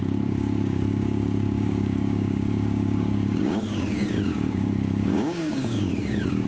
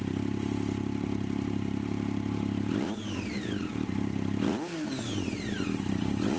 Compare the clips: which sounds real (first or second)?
second